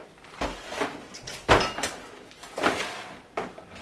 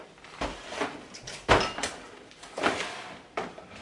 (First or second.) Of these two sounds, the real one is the first